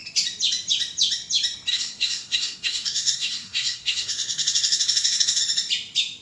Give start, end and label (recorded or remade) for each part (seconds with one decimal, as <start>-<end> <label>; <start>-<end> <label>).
0.0-1.7 recorded; 1.7-5.4 remade; 5.4-6.2 recorded